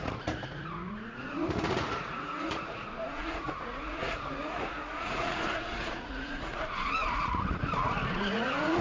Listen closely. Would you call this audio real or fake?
fake